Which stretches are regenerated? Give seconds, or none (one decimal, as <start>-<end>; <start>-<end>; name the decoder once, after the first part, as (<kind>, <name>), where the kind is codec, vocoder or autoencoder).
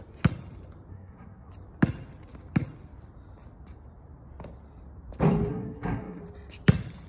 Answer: 0.9-1.5 (codec, SNAC); 5.5-6.2